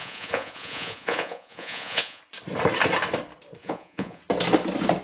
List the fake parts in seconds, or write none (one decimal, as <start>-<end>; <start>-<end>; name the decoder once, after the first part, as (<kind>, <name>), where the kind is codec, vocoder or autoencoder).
0.0-2.2 (vocoder, Vocos); 3.6-4.2